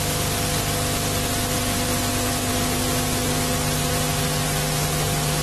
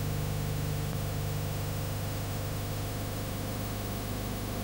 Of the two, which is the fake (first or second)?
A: second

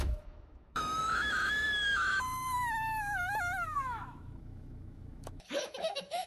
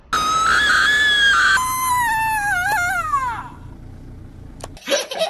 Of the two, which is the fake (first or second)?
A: first